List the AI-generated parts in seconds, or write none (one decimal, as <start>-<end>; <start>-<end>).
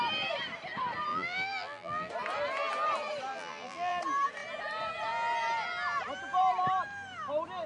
1.1-2.1; 3.3-4.0